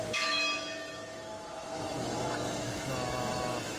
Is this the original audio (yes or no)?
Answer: no